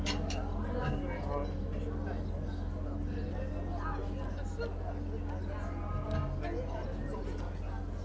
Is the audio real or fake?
real